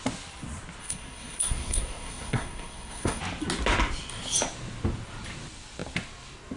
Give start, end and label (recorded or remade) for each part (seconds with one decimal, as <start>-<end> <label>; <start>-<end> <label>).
0.0-0.8 recorded; 0.8-3.2 remade; 3.2-6.6 recorded

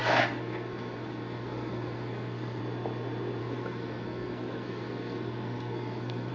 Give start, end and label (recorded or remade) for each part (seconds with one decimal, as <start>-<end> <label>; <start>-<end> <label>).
0.0-2.6 remade; 2.6-3.4 recorded; 3.4-6.3 remade

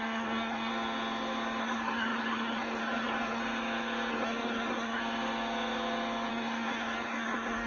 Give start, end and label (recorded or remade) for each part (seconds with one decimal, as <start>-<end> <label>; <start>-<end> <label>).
0.0-0.7 remade; 0.7-1.6 recorded; 1.6-3.4 remade; 3.4-4.1 recorded; 4.1-5.0 remade; 5.0-6.3 recorded; 6.3-7.7 remade